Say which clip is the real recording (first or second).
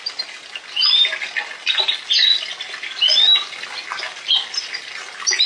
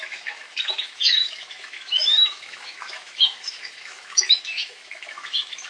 first